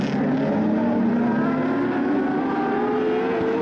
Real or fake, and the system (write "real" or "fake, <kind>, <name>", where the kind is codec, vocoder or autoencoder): real